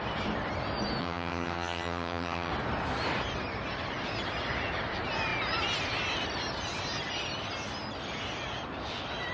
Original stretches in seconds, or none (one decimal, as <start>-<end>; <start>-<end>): 0.0-1.0; 2.5-9.3